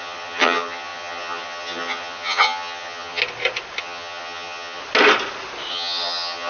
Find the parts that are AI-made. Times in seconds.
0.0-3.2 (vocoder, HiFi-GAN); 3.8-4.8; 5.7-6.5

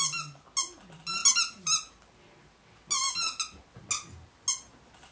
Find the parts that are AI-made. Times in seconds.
none